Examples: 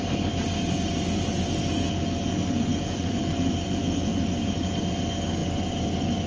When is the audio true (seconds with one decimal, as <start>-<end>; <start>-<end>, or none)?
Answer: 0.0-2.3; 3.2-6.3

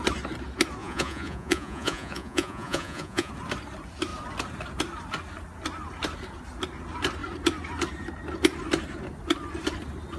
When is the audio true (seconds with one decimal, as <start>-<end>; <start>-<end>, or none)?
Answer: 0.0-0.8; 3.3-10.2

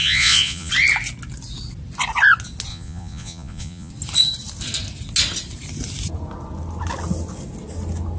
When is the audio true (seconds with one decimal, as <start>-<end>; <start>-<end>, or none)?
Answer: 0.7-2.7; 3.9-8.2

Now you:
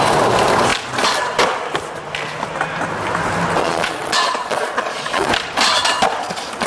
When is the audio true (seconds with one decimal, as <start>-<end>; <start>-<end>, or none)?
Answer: 0.0-3.6; 5.3-6.7

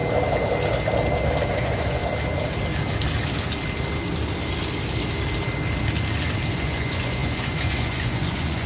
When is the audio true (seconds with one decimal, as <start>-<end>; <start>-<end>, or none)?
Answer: 0.0-1.5; 2.0-6.5